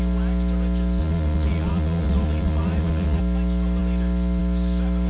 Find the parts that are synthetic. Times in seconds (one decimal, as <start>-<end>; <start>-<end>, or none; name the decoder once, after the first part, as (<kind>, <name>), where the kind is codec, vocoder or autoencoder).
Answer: 1.0-3.2 (vocoder, Vocos)